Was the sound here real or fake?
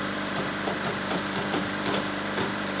fake